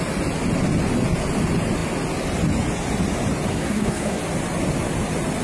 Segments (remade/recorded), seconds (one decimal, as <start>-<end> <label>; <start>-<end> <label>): 0.0-3.5 recorded; 3.5-4.2 remade; 4.2-5.4 recorded